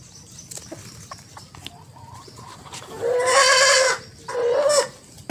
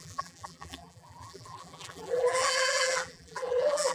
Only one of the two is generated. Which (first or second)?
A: second